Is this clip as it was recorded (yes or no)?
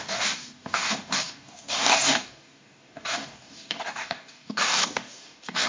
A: no